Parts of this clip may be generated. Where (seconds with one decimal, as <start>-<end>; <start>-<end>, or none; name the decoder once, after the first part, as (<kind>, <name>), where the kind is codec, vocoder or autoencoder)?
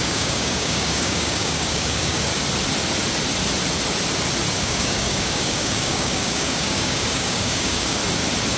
0.0-2.3 (codec, DAC); 4.6-8.0